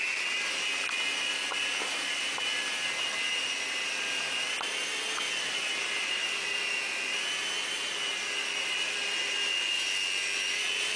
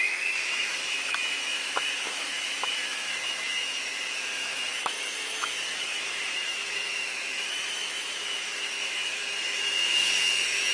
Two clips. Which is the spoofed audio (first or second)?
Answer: second